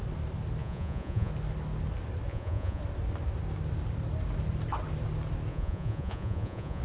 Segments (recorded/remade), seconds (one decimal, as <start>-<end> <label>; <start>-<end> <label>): 0.0-0.6 recorded; 0.6-1.3 remade; 1.3-2.3 recorded; 2.3-2.8 remade; 2.8-5.5 recorded; 5.5-6.8 remade